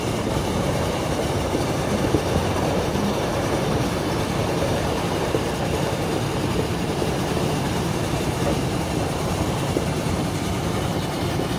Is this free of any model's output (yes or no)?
no